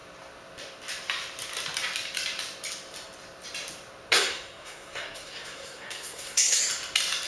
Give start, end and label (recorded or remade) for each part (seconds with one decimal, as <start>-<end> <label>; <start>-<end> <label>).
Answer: 0.0-4.1 recorded; 4.1-6.6 remade; 6.6-7.3 recorded